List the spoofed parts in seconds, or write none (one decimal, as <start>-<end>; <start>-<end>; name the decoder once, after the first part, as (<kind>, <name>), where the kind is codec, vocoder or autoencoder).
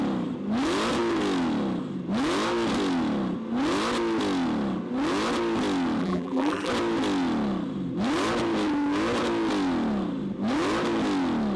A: 6.0-6.7 (vocoder, BigVGAN v2)